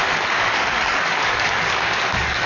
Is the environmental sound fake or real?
fake